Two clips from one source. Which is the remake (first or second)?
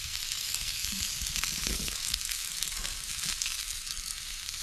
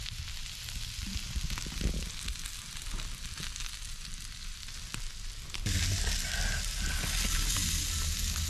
first